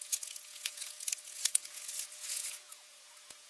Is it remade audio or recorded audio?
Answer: remade